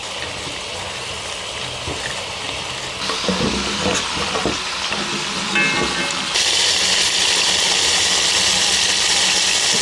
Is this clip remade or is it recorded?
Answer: recorded